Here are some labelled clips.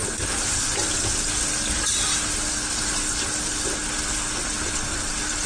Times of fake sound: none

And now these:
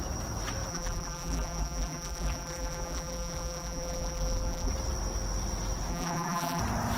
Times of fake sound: 0.7-4.7; 5.9-6.6

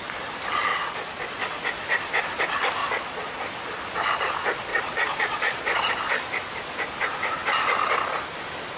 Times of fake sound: 0.7-1.3; 2.8-3.4; 4.7-5.9

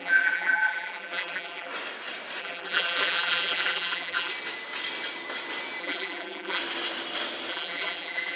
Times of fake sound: 0.0-1.7; 2.4-4.3; 5.8-6.6; 7.5-8.4

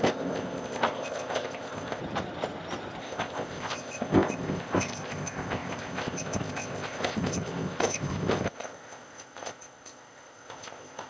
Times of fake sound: 0.0-2.0; 3.0-11.1

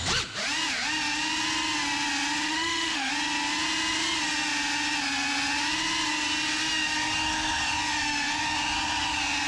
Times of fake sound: 2.5-3.1